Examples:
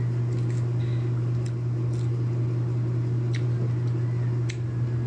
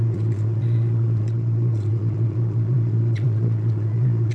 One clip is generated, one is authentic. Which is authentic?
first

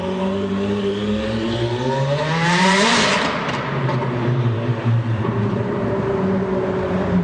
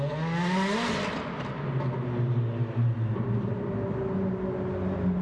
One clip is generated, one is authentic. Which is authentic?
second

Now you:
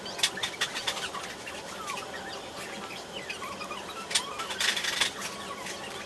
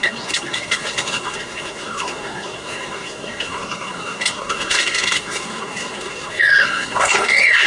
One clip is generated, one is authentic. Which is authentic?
first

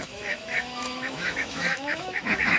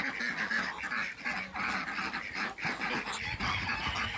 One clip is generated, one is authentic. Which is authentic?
second